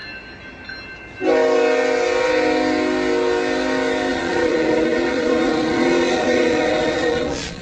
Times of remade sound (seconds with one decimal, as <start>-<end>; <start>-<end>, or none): 4.1-7.6